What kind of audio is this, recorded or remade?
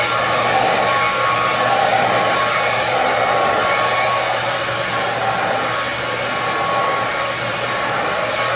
recorded